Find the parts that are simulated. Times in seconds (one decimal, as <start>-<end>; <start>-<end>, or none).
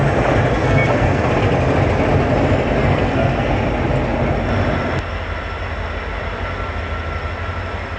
0.6-1.3; 2.8-3.5